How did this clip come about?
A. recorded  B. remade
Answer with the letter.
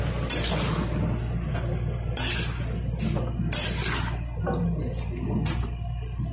A